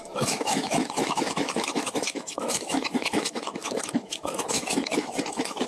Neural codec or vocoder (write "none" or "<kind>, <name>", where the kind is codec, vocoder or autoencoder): autoencoder, DAC-VAE